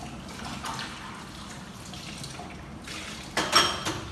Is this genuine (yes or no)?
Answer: yes